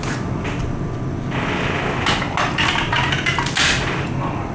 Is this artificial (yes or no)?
no